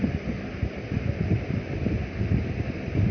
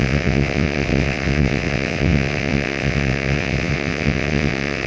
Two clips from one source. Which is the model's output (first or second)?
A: second